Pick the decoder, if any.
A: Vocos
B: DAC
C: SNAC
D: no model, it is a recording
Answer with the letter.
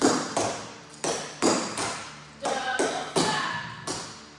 D